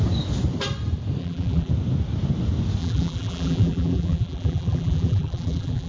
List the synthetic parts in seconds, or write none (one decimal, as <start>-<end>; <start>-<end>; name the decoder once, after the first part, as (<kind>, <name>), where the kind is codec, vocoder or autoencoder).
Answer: 1.2-1.7 (vocoder, BigVGAN v2); 2.8-5.9

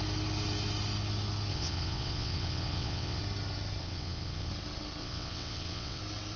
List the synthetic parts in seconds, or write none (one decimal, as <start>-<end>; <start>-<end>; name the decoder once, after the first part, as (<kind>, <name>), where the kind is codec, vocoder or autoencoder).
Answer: 1.5-3.2 (vocoder, WaveNeXt); 3.8-4.5; 5.0-6.0

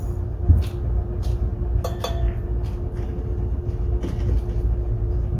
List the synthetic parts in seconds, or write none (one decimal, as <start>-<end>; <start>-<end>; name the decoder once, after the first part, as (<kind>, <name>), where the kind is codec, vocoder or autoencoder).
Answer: none

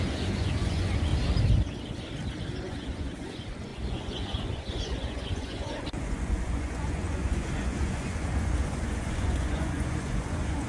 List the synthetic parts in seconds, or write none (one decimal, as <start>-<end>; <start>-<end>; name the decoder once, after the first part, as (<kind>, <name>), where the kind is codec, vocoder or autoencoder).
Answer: 0.0-1.1 (vocoder, Vocos); 2.6-10.7

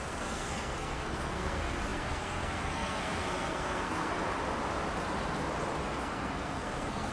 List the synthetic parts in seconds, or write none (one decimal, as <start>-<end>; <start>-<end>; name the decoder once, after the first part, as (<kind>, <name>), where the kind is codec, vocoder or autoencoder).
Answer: 0.0-4.1 (codec, SNAC); 5.8-7.1

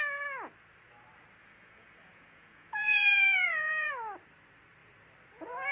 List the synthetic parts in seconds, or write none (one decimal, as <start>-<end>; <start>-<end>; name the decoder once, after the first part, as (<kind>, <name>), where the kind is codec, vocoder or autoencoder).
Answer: 1.4-3.9 (vocoder, Vocos)

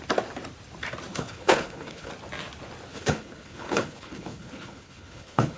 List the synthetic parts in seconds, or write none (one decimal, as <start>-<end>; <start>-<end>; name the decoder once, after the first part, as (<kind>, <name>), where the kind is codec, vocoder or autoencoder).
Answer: 1.1-2.1 (codec, HILCodec); 2.9-5.6

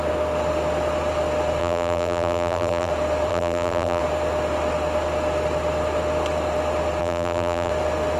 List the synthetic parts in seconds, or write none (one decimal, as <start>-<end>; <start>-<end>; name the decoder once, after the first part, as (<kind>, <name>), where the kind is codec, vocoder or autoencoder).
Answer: 1.6-2.9 (vocoder, BigVGAN v2); 3.3-4.0; 7.0-7.7